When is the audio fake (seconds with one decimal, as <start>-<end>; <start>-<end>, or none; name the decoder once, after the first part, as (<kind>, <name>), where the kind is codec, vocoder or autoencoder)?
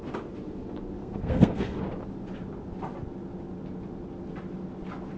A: 1.0-1.8 (codec, SNAC)